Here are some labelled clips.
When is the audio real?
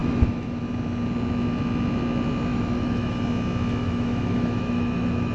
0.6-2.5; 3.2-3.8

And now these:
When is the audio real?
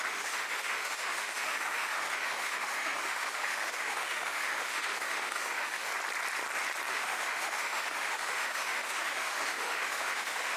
5.9-6.9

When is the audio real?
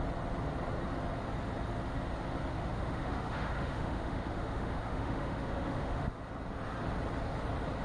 0.0-2.5; 6.2-7.8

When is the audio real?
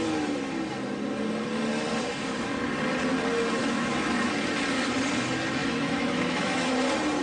0.0-3.6; 4.3-5.6; 6.7-7.2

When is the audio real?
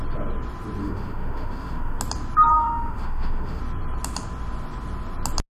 0.0-0.8; 2.0-2.5; 3.6-5.6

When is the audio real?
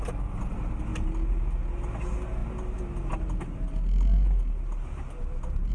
0.0-5.7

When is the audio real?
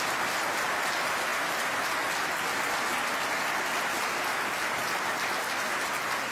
0.0-6.3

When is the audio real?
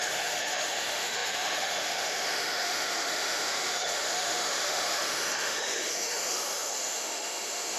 none